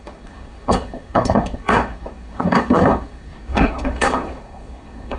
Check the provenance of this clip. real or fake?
fake